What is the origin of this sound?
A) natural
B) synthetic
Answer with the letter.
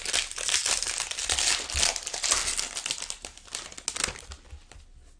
A